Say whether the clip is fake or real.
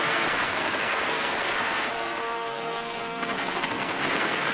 fake